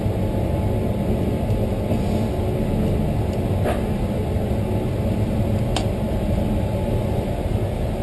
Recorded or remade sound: recorded